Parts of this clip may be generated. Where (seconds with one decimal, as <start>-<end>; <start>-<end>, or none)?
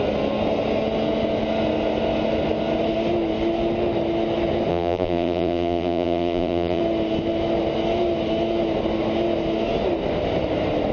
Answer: 4.7-6.8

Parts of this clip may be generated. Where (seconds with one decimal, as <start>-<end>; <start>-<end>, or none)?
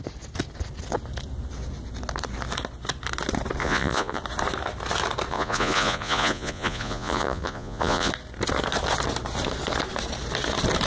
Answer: 3.6-4.2; 5.3-8.1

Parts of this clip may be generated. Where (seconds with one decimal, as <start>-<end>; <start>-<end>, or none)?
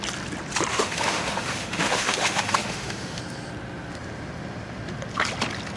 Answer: 0.7-3.2